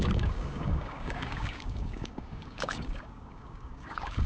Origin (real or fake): fake